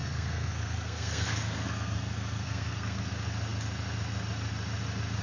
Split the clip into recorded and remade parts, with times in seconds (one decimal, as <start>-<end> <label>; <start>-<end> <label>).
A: 0.0-3.1 remade; 3.1-5.2 recorded